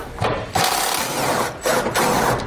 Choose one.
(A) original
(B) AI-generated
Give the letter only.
A